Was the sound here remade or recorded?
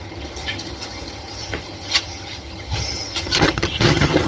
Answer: remade